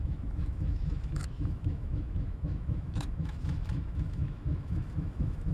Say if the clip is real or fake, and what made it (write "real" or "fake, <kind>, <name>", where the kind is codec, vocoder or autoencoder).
fake, autoencoder, DAC-VAE